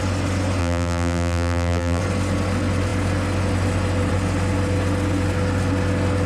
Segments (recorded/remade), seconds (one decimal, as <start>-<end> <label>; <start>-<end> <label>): 0.0-0.6 recorded; 0.6-2.0 remade; 2.0-6.3 recorded

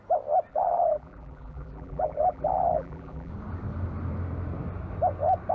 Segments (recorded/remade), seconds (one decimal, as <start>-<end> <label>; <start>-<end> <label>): 0.0-0.5 recorded; 0.5-3.3 remade; 3.3-5.5 recorded

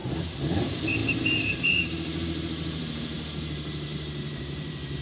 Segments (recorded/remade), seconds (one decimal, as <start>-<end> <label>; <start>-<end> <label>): 0.0-0.6 recorded; 0.6-5.0 remade

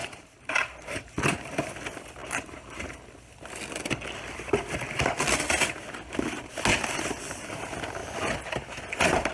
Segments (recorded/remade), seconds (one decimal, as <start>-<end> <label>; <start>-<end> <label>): 0.0-1.7 remade; 1.7-2.2 recorded; 2.2-3.0 remade; 3.0-9.3 recorded

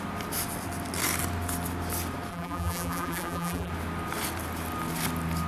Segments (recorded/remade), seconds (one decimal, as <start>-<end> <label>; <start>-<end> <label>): 0.0-2.3 recorded; 2.3-3.7 remade; 3.7-5.5 recorded

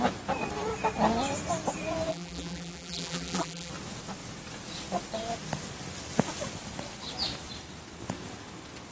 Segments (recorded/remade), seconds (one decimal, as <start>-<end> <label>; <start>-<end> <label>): 0.0-2.1 recorded; 2.1-3.7 remade; 3.7-8.9 recorded